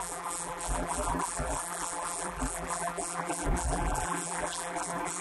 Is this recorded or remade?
remade